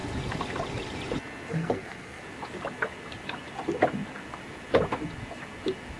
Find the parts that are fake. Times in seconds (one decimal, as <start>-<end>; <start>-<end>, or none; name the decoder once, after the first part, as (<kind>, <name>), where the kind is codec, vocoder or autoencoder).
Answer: 1.5-2.2 (codec, SNAC)